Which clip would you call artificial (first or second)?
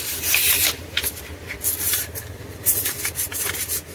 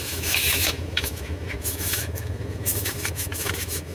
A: second